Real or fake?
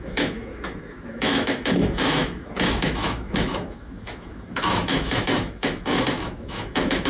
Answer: fake